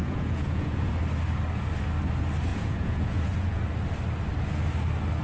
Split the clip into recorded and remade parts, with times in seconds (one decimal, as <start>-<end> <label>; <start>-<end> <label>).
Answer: 0.0-0.9 remade; 0.9-2.5 recorded; 2.5-3.6 remade; 3.6-5.2 recorded